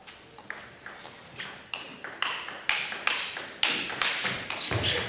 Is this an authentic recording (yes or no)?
yes